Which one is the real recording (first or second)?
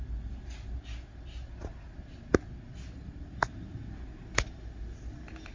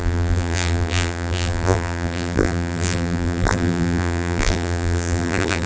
first